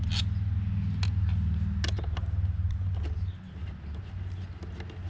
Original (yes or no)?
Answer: yes